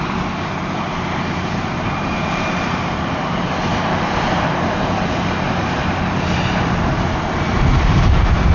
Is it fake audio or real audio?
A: fake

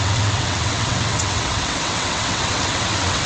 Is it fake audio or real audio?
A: fake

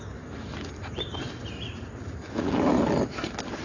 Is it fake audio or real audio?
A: real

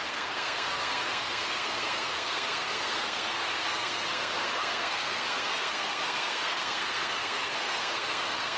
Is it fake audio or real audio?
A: fake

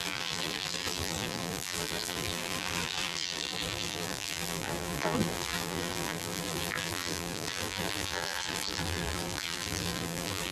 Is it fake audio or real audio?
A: fake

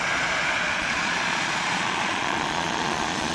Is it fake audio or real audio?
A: fake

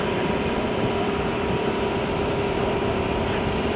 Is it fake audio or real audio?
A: fake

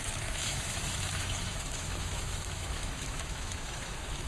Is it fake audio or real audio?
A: fake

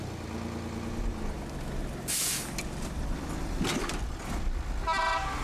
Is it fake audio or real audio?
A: real